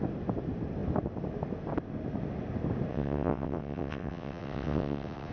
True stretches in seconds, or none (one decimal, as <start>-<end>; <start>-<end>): 0.0-2.9